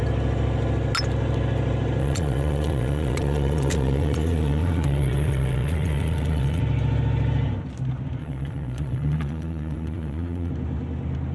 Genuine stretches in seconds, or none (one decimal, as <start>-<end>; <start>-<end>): 0.0-2.0; 6.6-8.2; 10.5-11.3

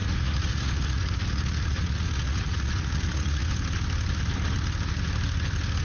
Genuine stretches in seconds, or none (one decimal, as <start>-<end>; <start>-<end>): 3.5-5.8

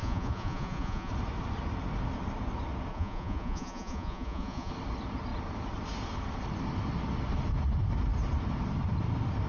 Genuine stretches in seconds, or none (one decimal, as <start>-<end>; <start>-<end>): 1.1-2.9; 4.7-9.5

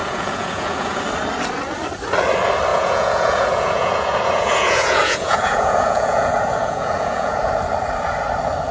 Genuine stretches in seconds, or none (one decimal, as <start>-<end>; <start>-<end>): 1.0-2.7; 7.5-8.7

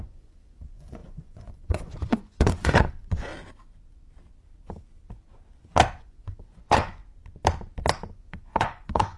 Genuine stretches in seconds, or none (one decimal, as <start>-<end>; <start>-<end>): 3.3-6.0; 7.0-8.1